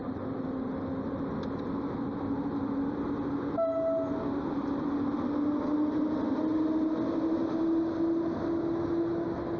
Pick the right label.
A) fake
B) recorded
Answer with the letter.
B